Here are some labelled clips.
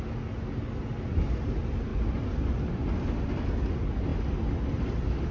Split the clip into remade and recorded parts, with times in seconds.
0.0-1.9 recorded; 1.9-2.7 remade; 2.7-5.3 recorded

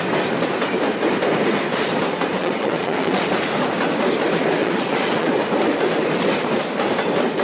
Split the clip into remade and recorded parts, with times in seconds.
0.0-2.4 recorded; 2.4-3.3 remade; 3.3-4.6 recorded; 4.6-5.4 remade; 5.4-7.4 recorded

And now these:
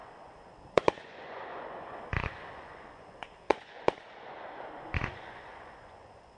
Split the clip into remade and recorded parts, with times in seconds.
0.0-6.4 remade